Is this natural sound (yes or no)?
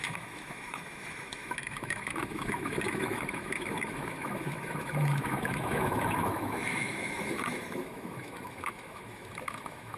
no